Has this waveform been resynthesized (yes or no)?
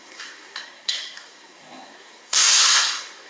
yes